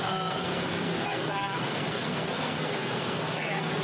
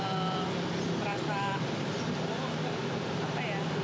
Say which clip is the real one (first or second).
second